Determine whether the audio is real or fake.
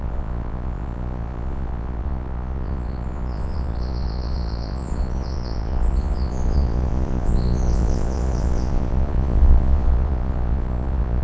fake